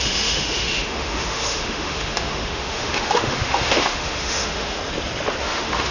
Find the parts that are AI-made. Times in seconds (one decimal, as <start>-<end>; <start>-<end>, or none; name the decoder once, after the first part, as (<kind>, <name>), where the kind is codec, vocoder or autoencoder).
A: 0.0-4.8 (autoencoder, DAC-VAE); 5.4-5.9